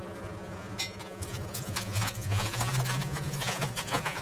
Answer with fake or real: fake